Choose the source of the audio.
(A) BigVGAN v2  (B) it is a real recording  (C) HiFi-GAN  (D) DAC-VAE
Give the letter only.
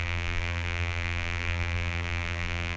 A